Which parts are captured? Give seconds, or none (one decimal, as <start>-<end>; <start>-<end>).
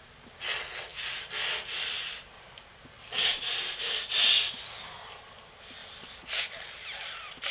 0.0-7.5